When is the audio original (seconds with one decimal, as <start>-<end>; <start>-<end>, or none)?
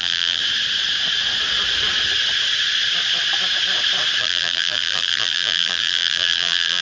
0.4-4.2